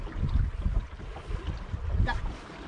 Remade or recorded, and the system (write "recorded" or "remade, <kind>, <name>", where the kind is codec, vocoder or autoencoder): recorded